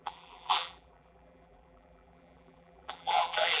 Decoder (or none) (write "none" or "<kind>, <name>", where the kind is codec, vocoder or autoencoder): vocoder, BigVGAN v2